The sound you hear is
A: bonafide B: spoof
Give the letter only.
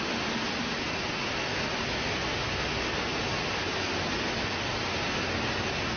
A